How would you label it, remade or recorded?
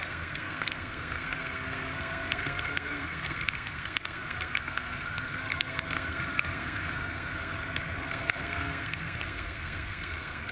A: remade